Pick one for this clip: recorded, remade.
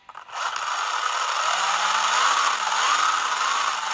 recorded